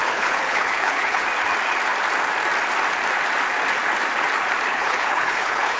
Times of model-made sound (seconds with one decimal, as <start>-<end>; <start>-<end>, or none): 0.0-1.2; 4.7-5.8